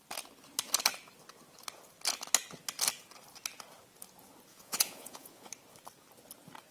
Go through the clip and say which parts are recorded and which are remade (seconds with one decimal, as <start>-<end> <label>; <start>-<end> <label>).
0.0-4.5 recorded; 4.5-5.5 remade; 5.5-6.7 recorded

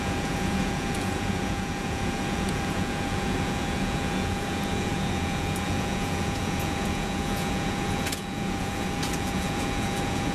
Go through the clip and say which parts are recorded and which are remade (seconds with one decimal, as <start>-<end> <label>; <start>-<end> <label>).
0.0-10.3 remade

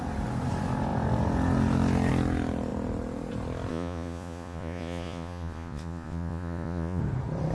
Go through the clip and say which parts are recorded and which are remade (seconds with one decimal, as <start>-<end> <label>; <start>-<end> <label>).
0.0-3.7 recorded; 3.7-7.0 remade; 7.0-7.5 recorded

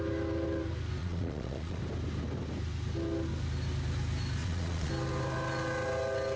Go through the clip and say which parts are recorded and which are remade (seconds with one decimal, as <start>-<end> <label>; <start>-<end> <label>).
0.0-1.0 recorded; 1.0-1.8 remade; 1.8-4.4 recorded; 4.4-4.9 remade; 4.9-6.4 recorded

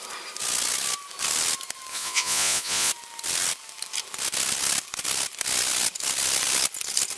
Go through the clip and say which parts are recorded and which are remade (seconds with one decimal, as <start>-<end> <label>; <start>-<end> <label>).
0.0-1.9 recorded; 1.9-2.9 remade; 2.9-7.2 recorded

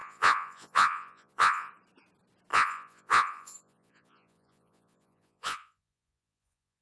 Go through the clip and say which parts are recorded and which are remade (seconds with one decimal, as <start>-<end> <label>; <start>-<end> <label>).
0.0-1.7 remade; 1.7-2.5 recorded; 2.5-6.8 remade